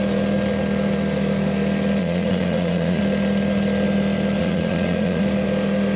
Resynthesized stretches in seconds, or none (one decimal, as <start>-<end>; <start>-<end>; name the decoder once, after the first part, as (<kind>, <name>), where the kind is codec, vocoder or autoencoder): 2.0-3.0 (vocoder, Vocos); 4.4-5.2